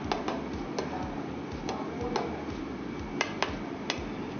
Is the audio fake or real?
real